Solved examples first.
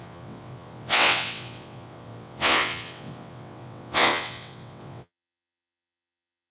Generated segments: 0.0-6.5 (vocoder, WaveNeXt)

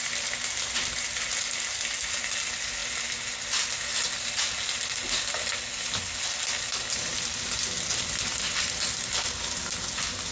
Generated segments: none

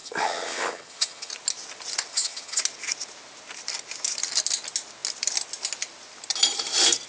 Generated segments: 0.0-1.3 (vocoder, HiFi-GAN); 2.1-2.6

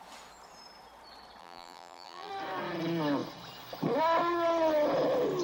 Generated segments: 1.4-2.3 (vocoder, BigVGAN v2)

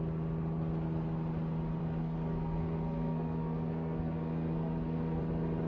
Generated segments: 1.8-5.2 (codec, SNAC)

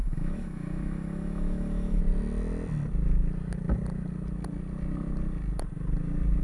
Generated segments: 0.0-2.0 (autoencoder, DAC-VAE)

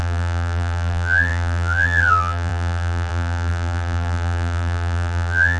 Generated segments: 0.0-5.6 (vocoder, BigVGAN v2)

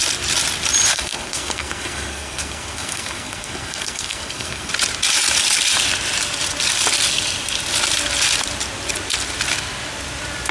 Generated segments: 0.9-4.7 (codec, SNAC)